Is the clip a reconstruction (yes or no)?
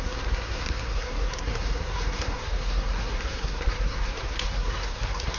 yes